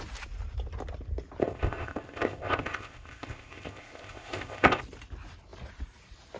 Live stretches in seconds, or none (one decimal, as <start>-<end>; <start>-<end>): 0.0-1.4; 4.8-6.4